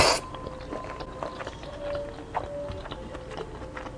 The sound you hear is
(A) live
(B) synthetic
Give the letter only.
A